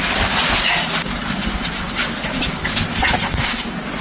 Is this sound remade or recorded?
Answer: recorded